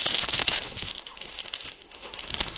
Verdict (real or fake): fake